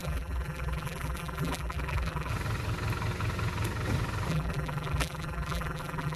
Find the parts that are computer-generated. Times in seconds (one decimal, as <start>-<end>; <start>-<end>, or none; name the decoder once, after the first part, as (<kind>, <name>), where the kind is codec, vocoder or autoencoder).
0.0-2.3 (vocoder, BigVGAN v2); 4.3-6.2